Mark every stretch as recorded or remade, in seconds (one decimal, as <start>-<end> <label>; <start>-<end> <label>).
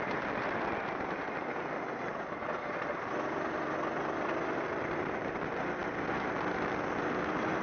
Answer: 0.0-7.6 recorded